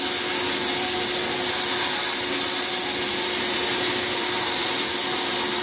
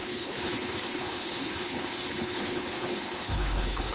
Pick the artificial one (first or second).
second